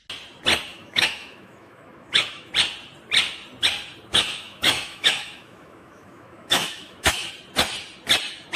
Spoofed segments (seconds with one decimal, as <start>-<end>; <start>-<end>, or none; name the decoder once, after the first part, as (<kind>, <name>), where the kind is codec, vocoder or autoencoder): 0.7-2.5 (autoencoder, DAC-VAE); 4.1-7.3